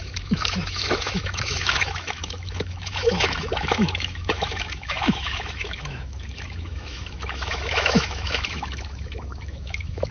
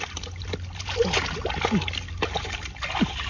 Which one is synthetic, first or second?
first